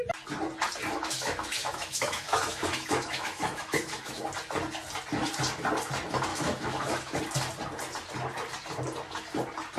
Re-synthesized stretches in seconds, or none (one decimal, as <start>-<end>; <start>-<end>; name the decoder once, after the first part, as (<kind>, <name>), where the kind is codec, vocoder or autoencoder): 0.9-4.2 (autoencoder, DAC-VAE); 6.3-7.2